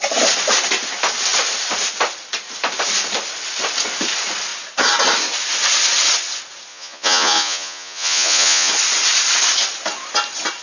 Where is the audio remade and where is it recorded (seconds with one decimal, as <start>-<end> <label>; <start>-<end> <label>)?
0.0-6.7 recorded; 6.7-8.7 remade; 8.7-10.6 recorded

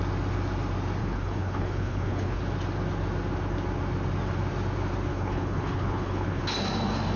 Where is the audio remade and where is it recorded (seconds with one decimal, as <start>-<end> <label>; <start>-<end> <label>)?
0.0-1.0 recorded; 1.0-2.4 remade; 2.4-5.1 recorded; 5.1-6.4 remade; 6.4-7.2 recorded

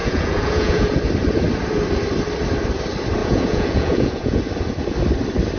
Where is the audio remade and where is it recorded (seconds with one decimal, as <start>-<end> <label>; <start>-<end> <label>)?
0.0-1.0 remade; 1.0-3.2 recorded; 3.2-4.4 remade; 4.4-5.6 recorded

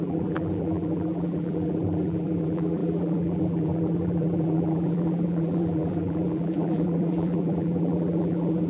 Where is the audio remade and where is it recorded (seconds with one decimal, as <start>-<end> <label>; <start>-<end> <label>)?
0.0-8.7 remade